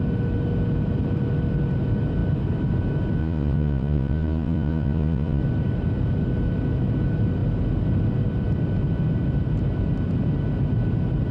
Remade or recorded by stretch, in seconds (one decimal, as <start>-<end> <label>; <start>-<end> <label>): 0.0-3.2 recorded; 3.2-5.4 remade; 5.4-11.3 recorded